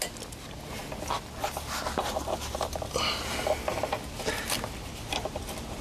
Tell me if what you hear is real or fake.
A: real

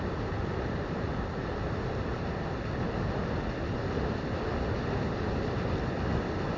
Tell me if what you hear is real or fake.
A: real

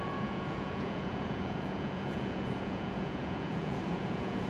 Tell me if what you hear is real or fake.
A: fake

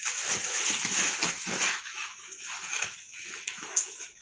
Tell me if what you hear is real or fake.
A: fake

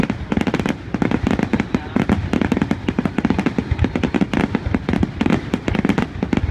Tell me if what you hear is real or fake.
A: fake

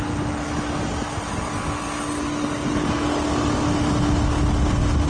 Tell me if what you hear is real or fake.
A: real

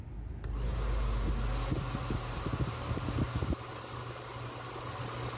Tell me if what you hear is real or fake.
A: real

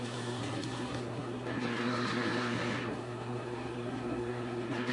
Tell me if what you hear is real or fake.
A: fake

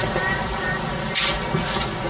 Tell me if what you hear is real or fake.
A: real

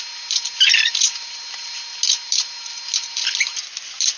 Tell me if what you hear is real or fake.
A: real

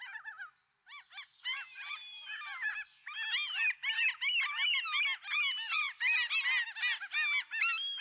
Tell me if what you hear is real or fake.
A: real